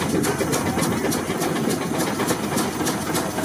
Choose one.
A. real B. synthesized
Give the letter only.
A